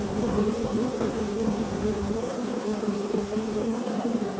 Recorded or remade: remade